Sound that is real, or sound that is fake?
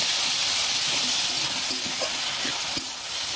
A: real